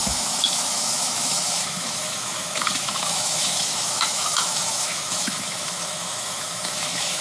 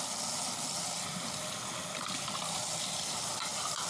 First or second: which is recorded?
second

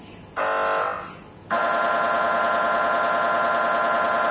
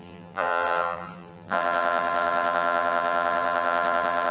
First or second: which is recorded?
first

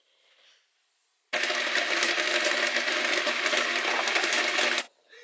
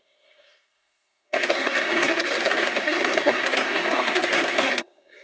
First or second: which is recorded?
first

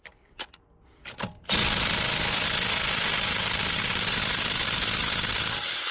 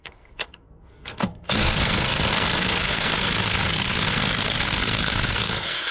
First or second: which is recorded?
first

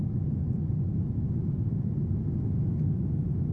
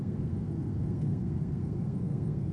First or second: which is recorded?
first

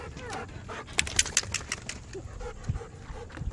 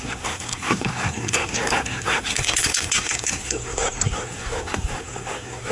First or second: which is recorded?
first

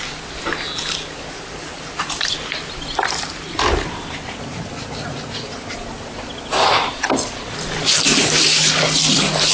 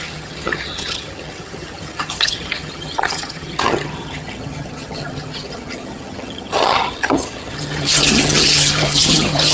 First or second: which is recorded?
first